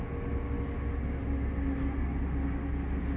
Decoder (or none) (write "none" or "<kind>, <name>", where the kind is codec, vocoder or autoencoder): none